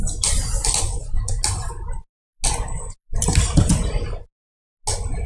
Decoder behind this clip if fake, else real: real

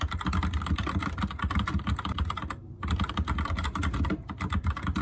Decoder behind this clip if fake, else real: real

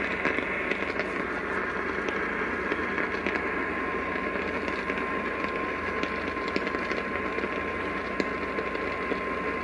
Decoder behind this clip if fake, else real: real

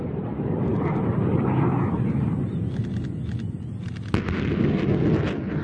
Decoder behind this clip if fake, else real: real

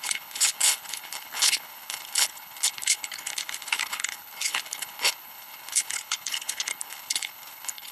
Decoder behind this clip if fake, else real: fake, codec, HILCodec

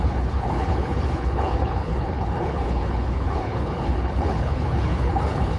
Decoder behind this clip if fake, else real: fake, codec, HILCodec